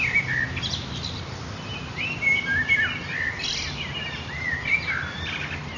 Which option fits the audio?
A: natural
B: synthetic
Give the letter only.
A